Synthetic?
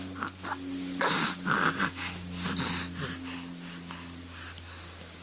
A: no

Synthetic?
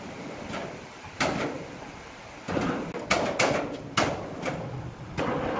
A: no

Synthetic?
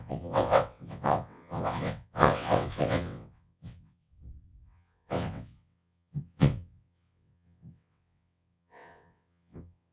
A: yes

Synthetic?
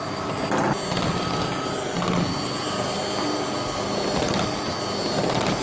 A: no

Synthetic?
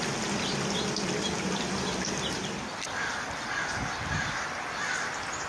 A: no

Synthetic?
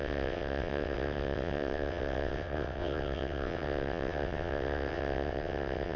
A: yes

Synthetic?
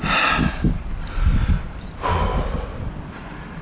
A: no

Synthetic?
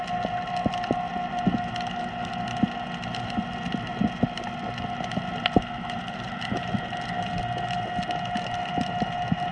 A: no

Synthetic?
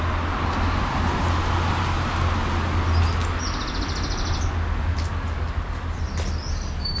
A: no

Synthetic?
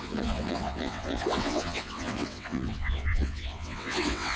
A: yes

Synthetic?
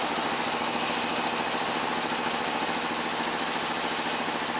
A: no